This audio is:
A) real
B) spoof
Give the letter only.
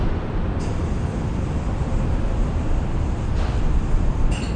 B